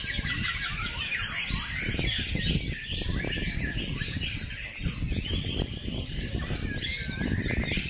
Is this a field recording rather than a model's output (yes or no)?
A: yes